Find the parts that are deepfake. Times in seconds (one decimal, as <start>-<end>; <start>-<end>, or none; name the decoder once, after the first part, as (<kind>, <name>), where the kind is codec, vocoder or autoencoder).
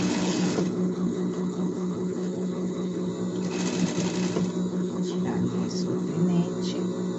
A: 0.0-3.1 (codec, HILCodec); 4.7-6.1